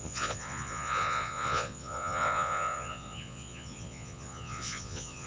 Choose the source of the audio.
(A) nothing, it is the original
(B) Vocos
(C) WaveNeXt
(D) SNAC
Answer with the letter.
B